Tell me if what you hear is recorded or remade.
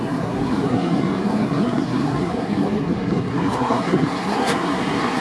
remade